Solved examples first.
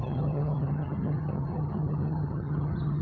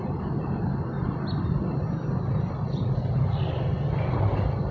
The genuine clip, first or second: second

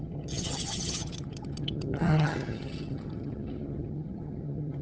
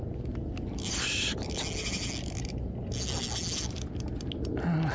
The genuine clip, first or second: second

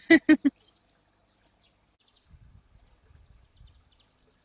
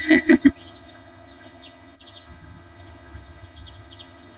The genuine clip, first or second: first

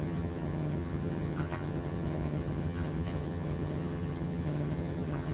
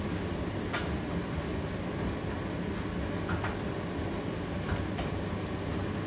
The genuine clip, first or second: second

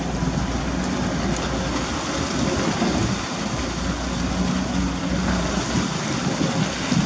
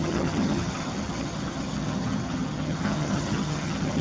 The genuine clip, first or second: first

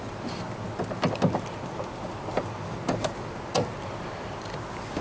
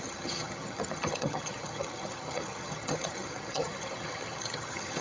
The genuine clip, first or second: first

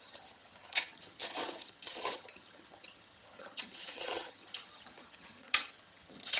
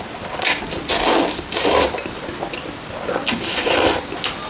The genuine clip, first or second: second